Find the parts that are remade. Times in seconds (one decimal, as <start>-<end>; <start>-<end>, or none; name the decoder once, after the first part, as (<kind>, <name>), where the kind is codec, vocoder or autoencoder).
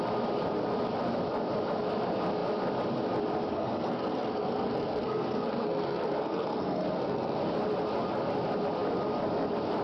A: 3.5-7.4 (codec, SNAC)